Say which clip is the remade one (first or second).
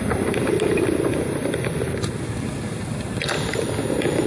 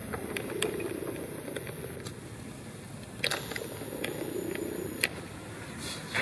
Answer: first